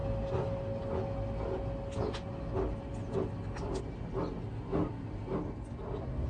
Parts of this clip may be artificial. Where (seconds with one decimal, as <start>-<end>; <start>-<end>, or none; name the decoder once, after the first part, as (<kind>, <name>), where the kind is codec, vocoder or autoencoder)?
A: none